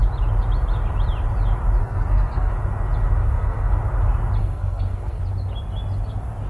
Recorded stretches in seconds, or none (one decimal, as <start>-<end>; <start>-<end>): 0.0-1.8; 2.5-3.2; 3.7-4.4; 5.2-6.5